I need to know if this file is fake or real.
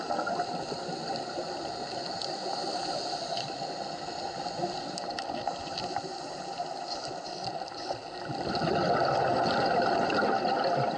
real